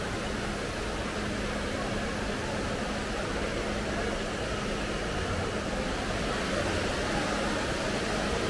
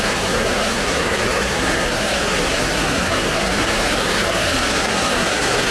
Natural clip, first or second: first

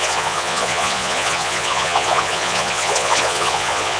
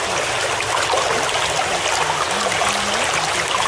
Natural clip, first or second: second